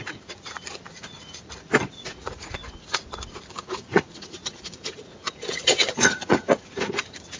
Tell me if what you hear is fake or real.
fake